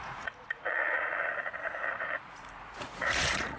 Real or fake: fake